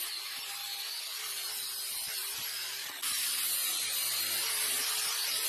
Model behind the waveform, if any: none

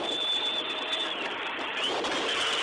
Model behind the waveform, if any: none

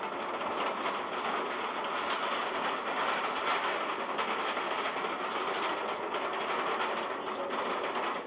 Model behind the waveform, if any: none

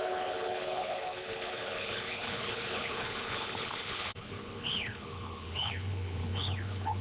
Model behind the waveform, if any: codec, HILCodec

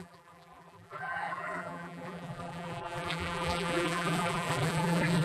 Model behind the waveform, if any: vocoder, BigVGAN v2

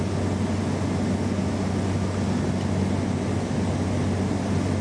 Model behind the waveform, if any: none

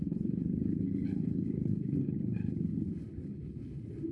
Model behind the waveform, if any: codec, HILCodec